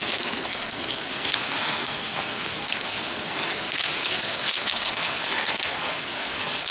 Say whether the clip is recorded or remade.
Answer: remade